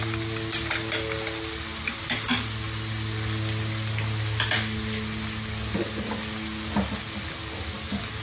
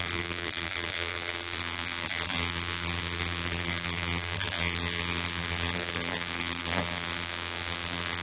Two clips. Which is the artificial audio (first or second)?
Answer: second